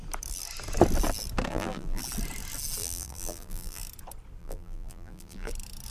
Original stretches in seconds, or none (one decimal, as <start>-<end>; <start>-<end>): 0.0-1.5; 2.0-2.8; 3.8-4.4; 5.5-5.9